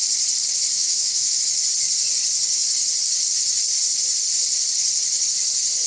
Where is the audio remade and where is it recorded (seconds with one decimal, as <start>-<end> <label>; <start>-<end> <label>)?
0.0-0.7 recorded; 0.7-1.4 remade; 1.4-5.9 recorded